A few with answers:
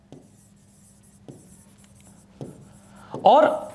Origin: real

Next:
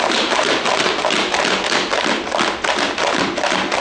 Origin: real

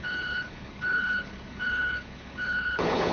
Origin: fake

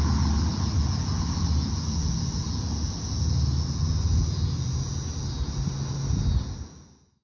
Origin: real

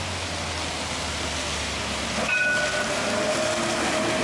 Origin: real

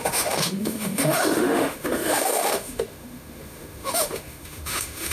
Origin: fake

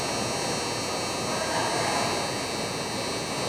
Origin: real